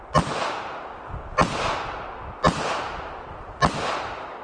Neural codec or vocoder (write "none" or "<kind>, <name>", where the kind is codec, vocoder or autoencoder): none